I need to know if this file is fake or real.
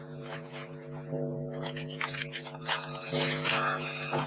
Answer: fake